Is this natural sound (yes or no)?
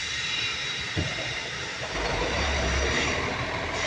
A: no